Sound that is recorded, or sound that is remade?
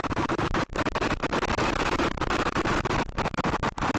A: remade